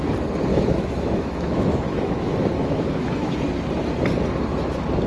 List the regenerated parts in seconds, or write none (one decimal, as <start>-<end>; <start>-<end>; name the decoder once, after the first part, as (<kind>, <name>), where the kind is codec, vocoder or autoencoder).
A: 0.5-3.4 (autoencoder, DAC-VAE)